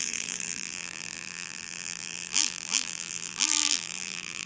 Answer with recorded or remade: remade